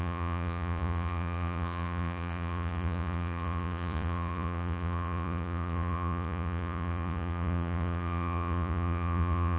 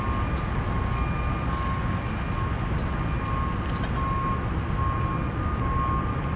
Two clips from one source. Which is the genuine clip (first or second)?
second